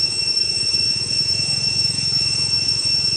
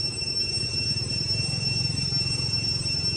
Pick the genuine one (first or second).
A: second